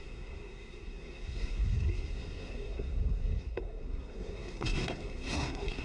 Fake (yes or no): yes